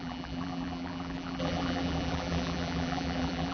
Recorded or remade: remade